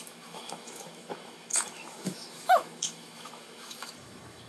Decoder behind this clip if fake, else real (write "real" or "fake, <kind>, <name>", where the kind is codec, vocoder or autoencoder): fake, autoencoder, DAC-VAE